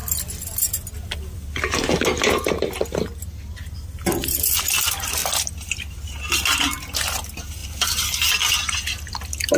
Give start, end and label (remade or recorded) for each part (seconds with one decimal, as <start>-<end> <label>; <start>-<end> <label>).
0.0-9.6 recorded